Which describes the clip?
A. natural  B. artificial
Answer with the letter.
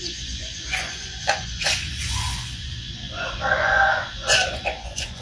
B